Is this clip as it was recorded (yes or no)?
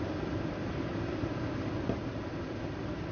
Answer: yes